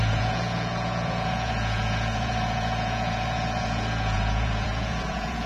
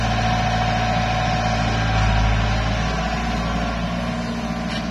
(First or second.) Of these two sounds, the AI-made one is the first